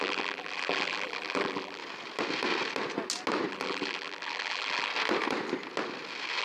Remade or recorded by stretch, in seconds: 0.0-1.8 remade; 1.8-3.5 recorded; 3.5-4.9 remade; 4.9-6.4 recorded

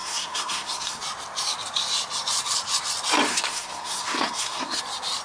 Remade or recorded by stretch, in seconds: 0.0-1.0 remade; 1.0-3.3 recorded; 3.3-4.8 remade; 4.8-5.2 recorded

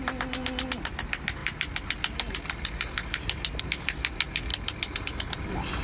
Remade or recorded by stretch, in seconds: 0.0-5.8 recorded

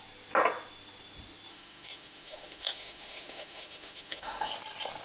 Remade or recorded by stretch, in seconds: 0.0-1.5 recorded; 1.5-4.5 remade; 4.5-5.0 recorded

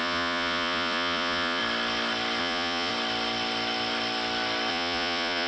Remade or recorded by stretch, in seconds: 0.0-1.6 remade; 1.6-2.4 recorded; 2.4-2.9 remade; 2.9-4.7 recorded; 4.7-5.5 remade

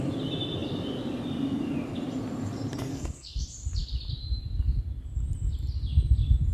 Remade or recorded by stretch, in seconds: 0.0-2.9 recorded; 2.9-3.4 remade; 3.4-6.5 recorded

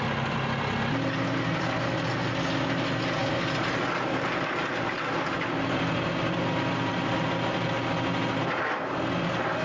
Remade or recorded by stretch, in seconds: 0.0-9.6 recorded